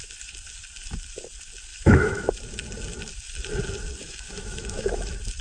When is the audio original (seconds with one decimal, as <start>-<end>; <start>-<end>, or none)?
0.0-1.7; 2.4-4.0; 5.0-5.4